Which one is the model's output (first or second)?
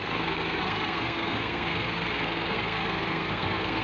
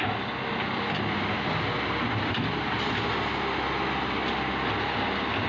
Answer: first